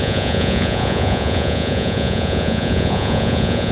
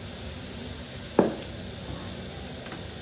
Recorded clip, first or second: second